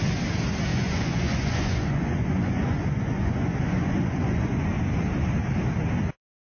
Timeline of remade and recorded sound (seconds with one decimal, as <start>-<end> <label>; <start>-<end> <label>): 0.0-0.7 recorded; 0.7-4.6 remade; 4.6-6.5 recorded